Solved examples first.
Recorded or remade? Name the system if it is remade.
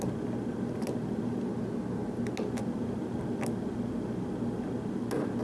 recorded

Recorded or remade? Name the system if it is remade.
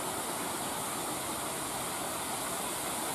recorded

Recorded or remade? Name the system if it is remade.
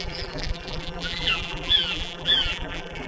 remade, vocoder, BigVGAN v2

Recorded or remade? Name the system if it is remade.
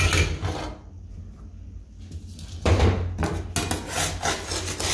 recorded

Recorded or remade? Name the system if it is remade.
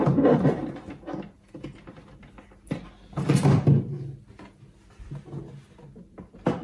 recorded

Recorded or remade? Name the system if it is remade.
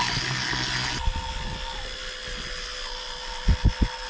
recorded